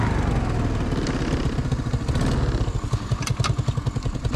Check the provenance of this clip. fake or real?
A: real